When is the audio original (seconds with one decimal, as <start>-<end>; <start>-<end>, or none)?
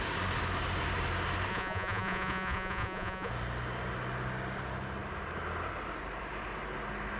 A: 0.0-1.5; 3.3-7.2